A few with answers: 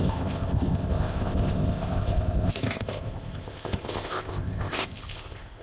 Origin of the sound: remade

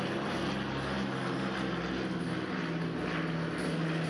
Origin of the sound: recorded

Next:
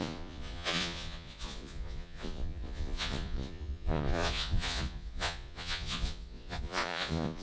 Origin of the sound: remade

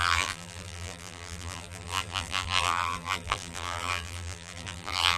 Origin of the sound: remade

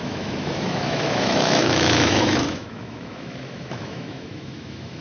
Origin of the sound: remade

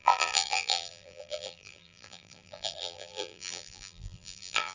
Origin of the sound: remade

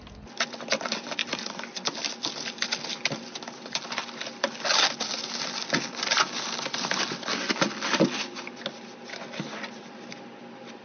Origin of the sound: recorded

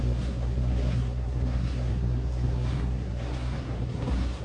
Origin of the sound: remade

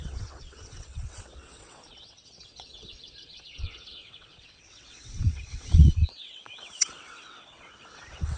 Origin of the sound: remade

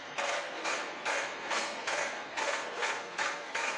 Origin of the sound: remade